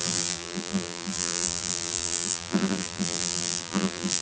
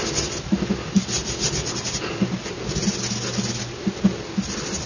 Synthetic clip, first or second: first